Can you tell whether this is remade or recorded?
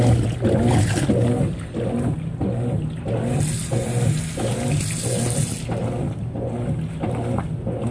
recorded